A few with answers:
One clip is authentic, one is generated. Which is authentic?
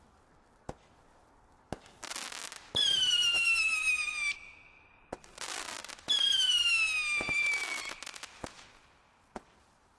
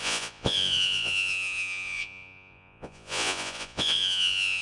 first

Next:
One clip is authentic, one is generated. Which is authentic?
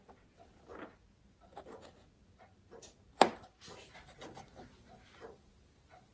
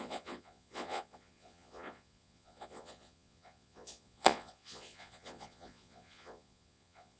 first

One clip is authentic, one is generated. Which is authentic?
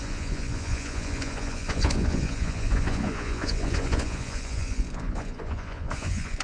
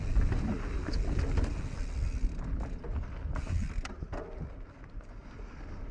second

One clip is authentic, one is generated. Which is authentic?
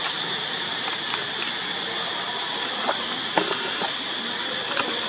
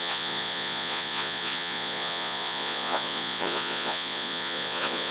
first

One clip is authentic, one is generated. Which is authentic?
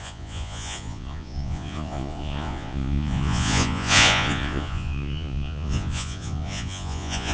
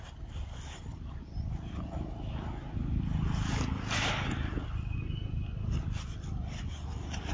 second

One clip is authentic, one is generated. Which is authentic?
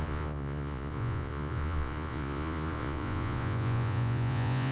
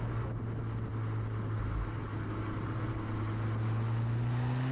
second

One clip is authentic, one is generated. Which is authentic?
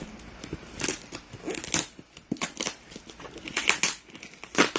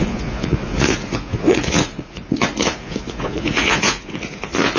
first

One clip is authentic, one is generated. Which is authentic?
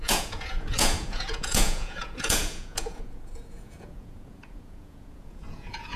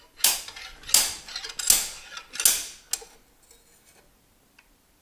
second